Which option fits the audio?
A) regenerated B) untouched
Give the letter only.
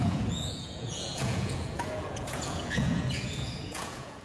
A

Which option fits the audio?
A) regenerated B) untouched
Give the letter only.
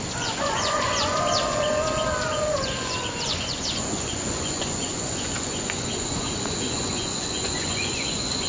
A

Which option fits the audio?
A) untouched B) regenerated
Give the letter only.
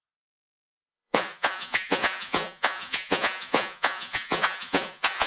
B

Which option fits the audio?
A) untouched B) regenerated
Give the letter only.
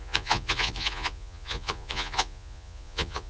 B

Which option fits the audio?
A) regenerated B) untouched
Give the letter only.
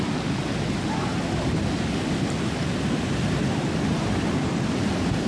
B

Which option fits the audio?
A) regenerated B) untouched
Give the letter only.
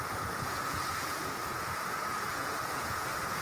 A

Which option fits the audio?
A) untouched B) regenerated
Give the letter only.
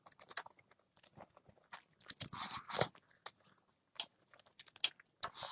A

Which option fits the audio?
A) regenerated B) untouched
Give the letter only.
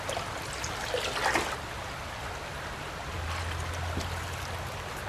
B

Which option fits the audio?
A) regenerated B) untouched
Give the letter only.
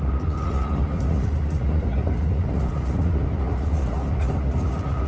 A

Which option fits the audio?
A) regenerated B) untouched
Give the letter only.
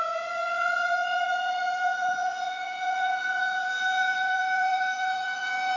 A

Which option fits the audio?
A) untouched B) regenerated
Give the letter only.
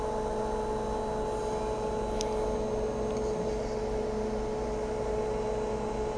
A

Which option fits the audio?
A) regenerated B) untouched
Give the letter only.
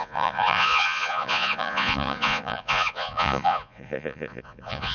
A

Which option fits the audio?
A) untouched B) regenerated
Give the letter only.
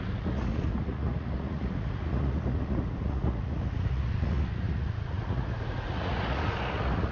B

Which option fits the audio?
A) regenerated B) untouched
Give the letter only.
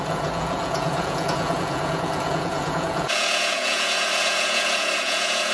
A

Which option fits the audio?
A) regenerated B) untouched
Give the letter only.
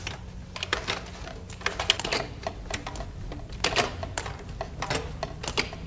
B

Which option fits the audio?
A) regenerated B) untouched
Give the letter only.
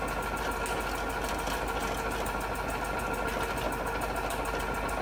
B